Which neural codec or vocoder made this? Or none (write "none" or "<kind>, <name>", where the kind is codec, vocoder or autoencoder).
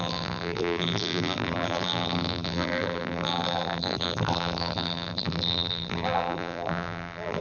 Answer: vocoder, BigVGAN v2